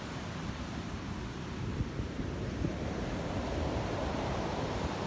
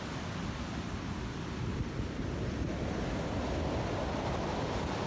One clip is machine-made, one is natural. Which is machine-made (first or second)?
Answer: first